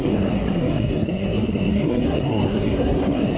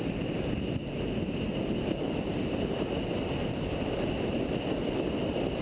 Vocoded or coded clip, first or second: first